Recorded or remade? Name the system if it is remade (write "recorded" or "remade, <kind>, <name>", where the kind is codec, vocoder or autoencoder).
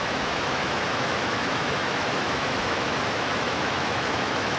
remade, autoencoder, DAC-VAE